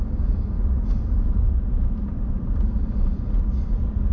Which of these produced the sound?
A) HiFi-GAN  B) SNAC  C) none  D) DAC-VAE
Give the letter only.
C